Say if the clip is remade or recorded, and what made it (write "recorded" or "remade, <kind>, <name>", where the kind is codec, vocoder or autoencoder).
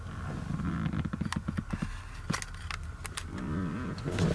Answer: recorded